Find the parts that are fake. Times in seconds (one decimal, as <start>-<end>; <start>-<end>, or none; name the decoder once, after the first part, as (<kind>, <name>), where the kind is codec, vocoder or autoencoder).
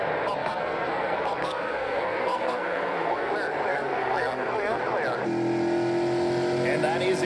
0.4-3.3 (codec, SNAC); 3.7-4.8